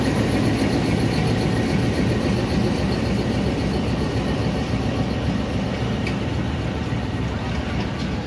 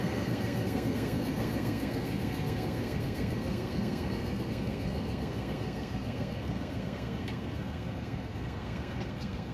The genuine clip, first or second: first